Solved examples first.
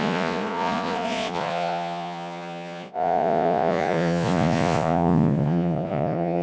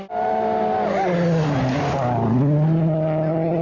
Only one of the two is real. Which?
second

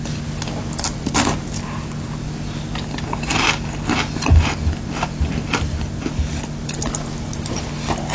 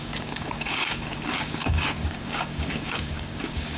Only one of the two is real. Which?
first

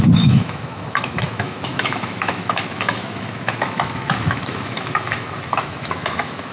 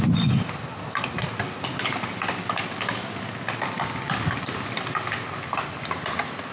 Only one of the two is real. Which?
second